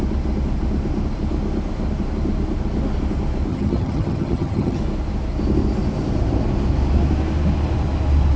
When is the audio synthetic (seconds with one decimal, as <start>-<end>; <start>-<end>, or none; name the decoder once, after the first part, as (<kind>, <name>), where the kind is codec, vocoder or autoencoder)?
3.5-4.8 (vocoder, HiFi-GAN)